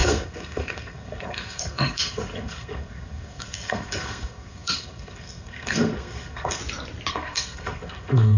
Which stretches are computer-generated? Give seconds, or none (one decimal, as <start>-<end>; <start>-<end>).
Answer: 0.0-6.6; 7.1-8.4